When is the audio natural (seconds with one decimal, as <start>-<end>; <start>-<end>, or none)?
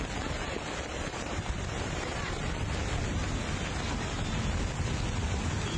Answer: 0.0-0.9; 2.2-5.8